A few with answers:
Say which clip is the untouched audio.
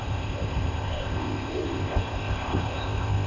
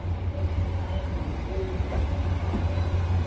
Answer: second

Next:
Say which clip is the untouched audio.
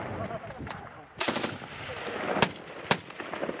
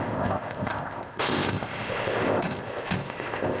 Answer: first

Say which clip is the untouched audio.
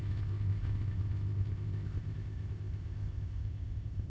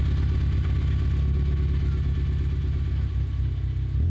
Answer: second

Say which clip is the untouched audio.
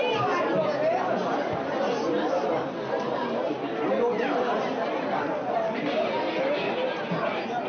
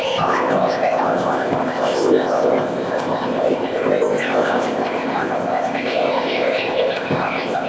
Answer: first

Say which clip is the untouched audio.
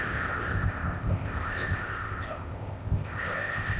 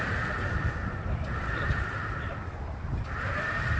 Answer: second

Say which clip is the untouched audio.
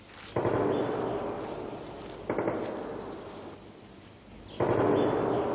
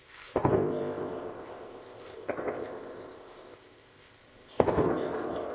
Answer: first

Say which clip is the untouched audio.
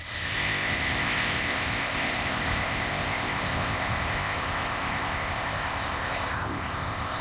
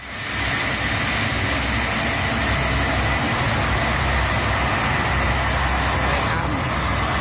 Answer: second